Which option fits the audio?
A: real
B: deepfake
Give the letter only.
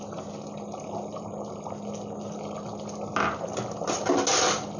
A